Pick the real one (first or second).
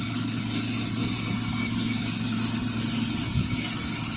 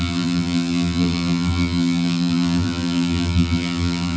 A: first